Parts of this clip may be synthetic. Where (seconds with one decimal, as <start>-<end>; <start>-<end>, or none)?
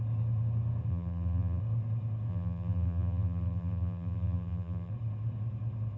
0.9-1.6; 2.3-4.9